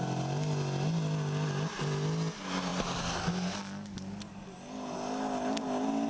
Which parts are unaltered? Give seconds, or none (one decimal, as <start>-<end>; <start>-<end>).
0.0-6.1